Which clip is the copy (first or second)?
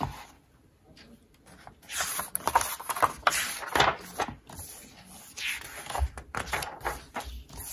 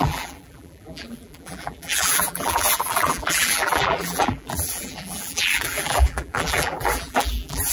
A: second